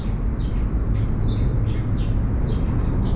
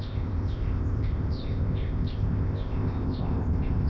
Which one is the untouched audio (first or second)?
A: first